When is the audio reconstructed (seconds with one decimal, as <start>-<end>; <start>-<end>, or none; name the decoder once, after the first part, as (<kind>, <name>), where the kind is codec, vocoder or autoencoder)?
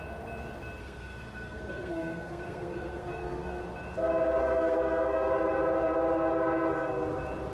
0.8-3.6 (codec, SNAC); 4.4-5.3